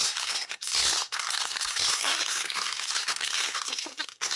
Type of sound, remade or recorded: remade